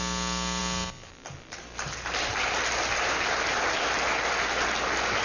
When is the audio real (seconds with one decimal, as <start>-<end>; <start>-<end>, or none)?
0.0-5.2